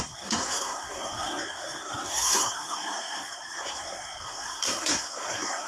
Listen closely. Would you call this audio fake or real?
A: fake